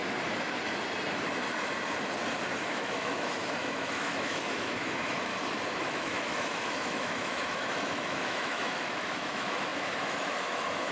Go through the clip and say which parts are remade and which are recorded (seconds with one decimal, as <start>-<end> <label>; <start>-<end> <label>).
0.0-2.7 recorded; 2.7-5.3 remade; 5.3-5.8 recorded; 5.8-10.9 remade